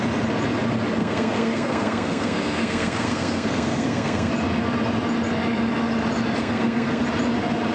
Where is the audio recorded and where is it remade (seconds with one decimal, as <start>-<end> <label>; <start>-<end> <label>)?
0.0-1.0 recorded; 1.0-4.3 remade; 4.3-6.4 recorded; 6.4-7.0 remade; 7.0-7.7 recorded